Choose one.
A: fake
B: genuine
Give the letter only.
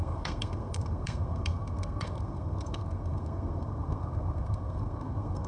A